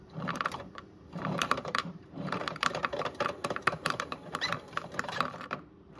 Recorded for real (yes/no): no